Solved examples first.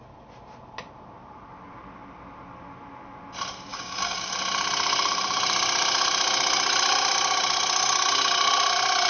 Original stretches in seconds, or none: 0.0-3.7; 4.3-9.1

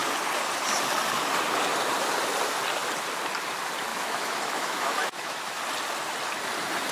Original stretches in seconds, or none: 0.0-3.9; 5.6-6.9